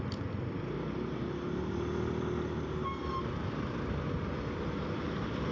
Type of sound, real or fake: real